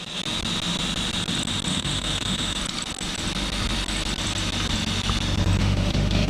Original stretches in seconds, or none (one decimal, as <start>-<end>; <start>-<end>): 0.0-1.7; 2.6-5.6